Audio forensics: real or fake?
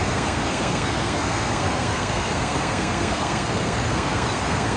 fake